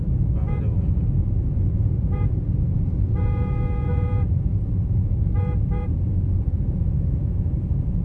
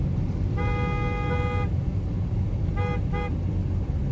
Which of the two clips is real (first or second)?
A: second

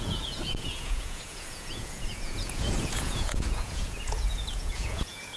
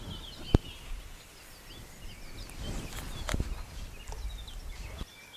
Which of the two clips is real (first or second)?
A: second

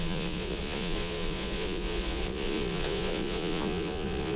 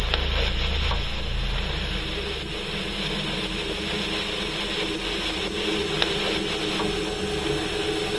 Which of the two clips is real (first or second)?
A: second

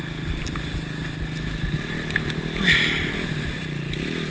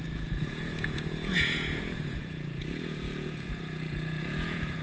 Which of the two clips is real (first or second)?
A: first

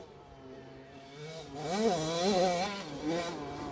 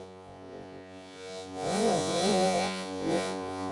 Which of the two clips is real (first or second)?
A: first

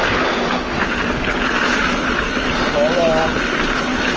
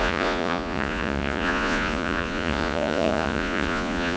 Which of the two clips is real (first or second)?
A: first